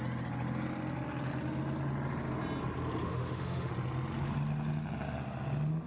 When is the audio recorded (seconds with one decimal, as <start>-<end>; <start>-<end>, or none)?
0.0-3.0; 3.7-5.9